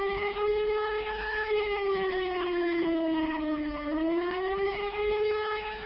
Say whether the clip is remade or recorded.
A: remade